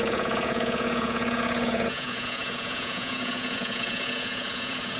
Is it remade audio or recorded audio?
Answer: remade